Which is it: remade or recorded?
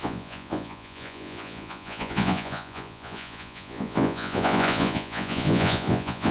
remade